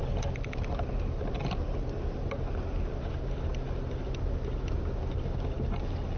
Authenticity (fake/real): real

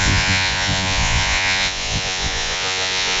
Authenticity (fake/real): fake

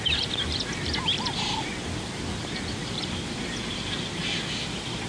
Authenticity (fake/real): real